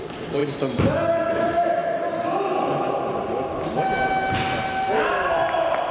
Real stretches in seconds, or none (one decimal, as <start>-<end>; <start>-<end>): 0.0-5.9